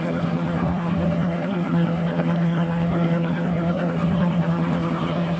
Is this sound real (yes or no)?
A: no